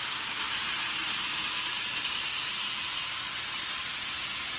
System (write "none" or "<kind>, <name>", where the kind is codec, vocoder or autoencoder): none